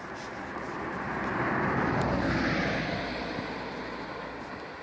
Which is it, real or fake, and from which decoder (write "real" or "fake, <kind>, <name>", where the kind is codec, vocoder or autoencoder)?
real